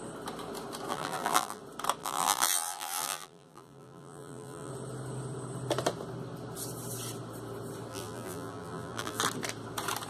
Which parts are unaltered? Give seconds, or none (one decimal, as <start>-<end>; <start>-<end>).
0.0-0.9; 1.6-2.0; 4.7-7.9; 9.2-10.1